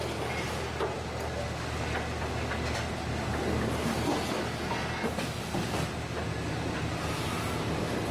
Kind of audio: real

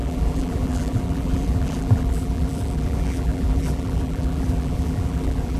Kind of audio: fake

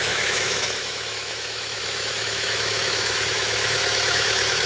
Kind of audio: fake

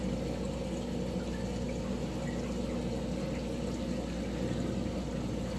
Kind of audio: real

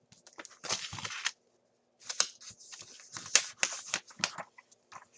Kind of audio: real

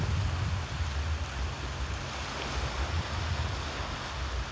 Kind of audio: real